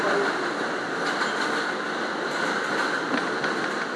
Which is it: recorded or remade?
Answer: recorded